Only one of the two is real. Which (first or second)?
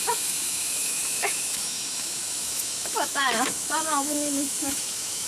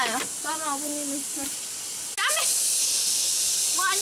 second